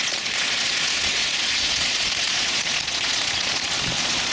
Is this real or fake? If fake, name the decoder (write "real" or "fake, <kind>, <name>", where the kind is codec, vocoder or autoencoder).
fake, vocoder, Vocos